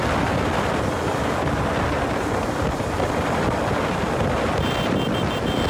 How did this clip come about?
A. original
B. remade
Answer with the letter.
B